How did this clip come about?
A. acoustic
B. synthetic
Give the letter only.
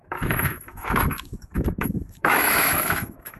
B